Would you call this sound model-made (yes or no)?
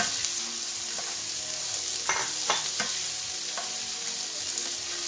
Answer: no